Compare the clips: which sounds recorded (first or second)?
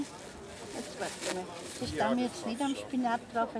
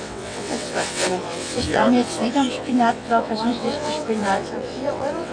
first